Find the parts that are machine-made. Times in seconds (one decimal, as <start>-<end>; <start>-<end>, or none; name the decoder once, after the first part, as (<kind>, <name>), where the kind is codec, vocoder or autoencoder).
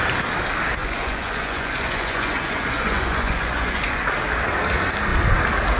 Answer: 0.8-4.1 (vocoder, Vocos)